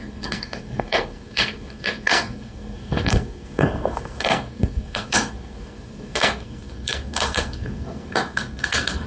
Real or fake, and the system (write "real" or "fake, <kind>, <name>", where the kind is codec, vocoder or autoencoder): fake, codec, SNAC